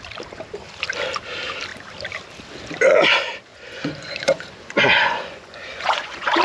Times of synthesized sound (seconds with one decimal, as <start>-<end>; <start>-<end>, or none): 3.5-6.4